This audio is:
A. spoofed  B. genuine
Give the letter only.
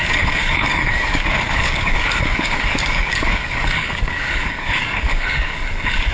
A